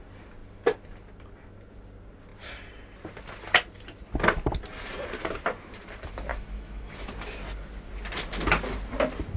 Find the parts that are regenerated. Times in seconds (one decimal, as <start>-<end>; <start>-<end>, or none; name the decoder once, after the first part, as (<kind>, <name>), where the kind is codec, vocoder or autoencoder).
6.3-7.1 (autoencoder, DAC-VAE)